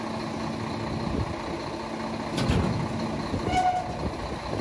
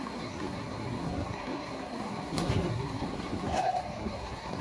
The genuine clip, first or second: first